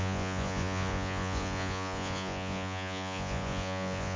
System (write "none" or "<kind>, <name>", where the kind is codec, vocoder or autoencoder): vocoder, Vocos